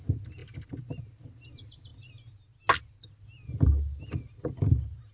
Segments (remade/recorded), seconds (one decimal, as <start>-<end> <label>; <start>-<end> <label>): 0.0-5.1 recorded